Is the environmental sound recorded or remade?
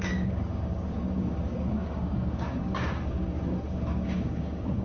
remade